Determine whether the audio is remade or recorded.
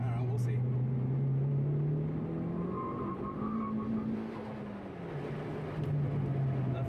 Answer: recorded